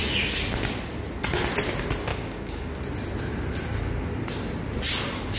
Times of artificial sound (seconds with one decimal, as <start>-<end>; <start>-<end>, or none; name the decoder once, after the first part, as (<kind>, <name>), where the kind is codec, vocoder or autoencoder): 2.1-2.7 (codec, DAC)